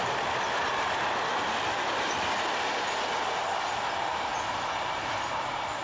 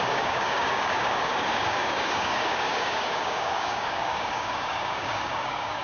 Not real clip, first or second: second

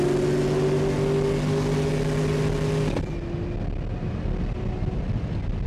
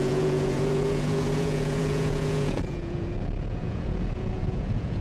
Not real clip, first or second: second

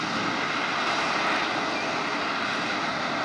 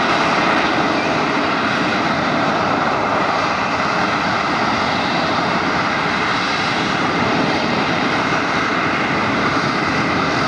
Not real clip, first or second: second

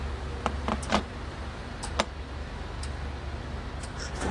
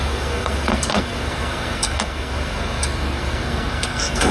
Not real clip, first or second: second